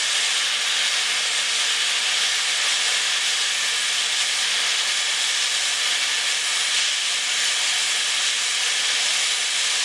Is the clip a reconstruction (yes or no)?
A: no